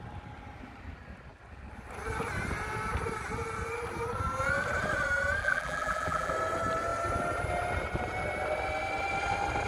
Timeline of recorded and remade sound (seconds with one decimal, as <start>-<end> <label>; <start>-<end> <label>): 0.0-5.4 recorded; 5.4-6.3 remade; 6.3-9.7 recorded